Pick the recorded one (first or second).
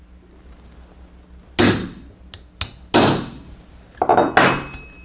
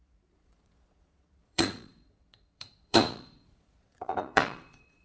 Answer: first